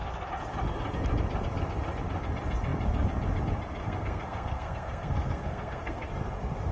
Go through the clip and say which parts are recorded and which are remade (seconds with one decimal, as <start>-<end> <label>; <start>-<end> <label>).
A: 0.0-3.8 recorded; 3.8-6.1 remade; 6.1-6.7 recorded